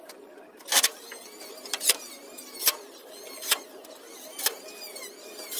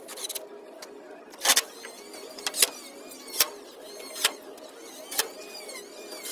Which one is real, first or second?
second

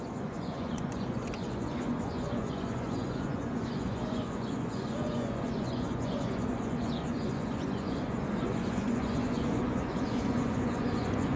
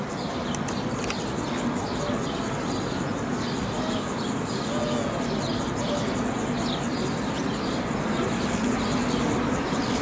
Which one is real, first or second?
second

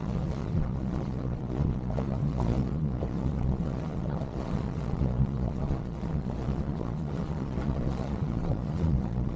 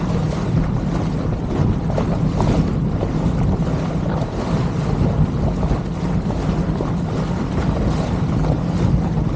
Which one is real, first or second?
second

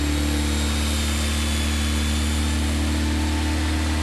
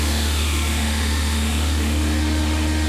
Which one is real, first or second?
first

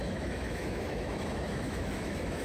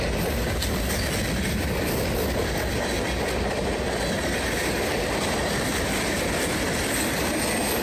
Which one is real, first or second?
second